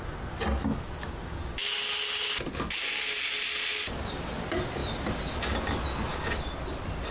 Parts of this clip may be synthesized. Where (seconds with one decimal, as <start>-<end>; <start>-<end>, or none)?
none